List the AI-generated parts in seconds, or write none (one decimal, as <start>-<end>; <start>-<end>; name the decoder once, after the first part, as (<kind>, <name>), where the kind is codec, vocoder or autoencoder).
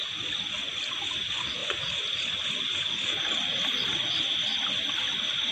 none